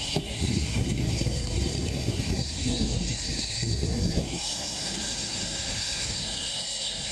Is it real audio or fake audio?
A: fake